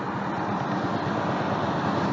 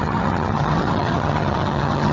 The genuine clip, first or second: first